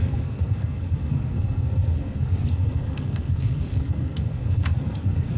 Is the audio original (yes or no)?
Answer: no